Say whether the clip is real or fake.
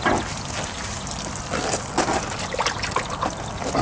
real